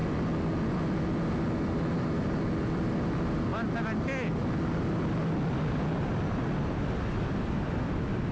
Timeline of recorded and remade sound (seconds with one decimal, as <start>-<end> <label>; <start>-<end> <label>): 0.0-8.3 recorded